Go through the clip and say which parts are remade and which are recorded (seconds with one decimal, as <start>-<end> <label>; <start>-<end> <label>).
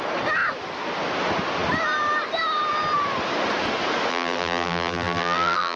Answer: 0.0-4.1 recorded; 4.1-5.8 remade